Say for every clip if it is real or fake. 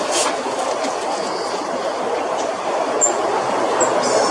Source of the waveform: real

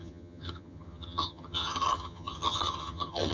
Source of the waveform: fake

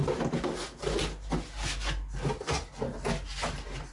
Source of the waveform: real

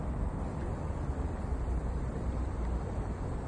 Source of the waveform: real